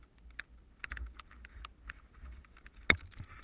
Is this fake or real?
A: real